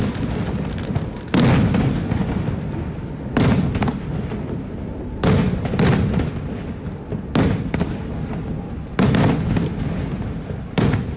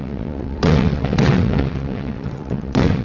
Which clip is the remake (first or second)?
second